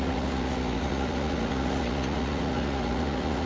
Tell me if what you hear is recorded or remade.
remade